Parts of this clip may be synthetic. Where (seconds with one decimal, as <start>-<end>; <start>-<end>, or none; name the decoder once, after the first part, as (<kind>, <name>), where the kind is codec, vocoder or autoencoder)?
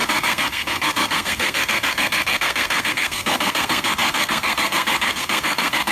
0.0-5.9 (codec, SNAC)